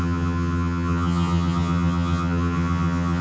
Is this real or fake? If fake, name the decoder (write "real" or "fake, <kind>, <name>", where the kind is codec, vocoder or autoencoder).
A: fake, vocoder, HiFi-GAN